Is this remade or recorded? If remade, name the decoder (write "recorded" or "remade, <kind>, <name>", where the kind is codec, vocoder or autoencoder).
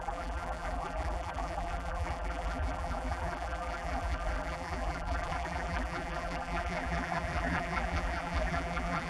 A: remade, vocoder, BigVGAN v2